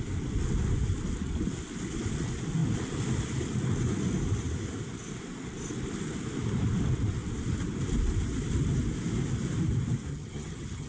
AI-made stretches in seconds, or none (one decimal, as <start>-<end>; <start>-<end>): 10.1-10.9